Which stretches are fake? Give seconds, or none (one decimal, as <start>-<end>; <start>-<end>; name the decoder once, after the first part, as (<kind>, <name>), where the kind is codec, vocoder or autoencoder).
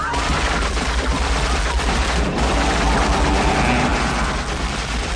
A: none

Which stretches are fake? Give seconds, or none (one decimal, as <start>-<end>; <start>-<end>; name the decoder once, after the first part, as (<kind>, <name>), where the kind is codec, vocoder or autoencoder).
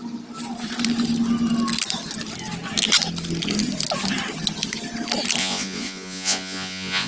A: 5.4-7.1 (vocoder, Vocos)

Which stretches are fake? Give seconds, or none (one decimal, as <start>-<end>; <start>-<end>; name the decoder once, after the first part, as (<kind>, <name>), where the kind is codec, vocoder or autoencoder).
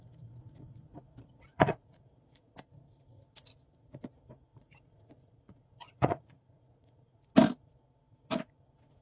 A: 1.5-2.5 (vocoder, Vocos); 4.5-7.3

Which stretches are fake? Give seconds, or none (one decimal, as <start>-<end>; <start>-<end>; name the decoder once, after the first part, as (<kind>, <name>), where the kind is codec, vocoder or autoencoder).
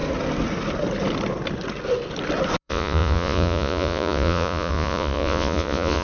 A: 2.6-6.0 (vocoder, Vocos)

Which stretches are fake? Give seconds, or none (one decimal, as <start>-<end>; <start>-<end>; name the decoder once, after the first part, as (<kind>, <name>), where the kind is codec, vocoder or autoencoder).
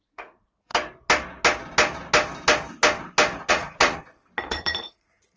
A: 0.0-0.7 (vocoder, Vocos); 3.5-4.0; 4.5-5.4